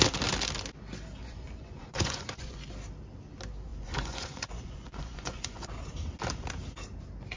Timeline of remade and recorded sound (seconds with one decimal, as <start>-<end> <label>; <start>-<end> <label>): 0.0-1.2 recorded; 1.2-2.7 remade; 2.7-3.7 recorded; 3.7-5.7 remade; 5.7-7.4 recorded